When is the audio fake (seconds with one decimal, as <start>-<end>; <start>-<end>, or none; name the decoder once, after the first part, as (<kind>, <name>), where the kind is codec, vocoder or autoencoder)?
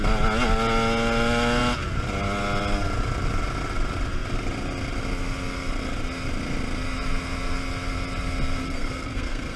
8.6-9.6 (codec, SNAC)